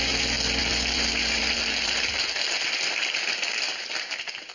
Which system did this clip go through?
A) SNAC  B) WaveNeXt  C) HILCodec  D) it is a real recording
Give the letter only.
D